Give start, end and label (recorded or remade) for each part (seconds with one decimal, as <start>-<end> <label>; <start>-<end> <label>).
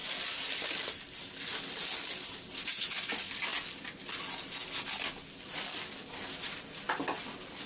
0.0-7.7 recorded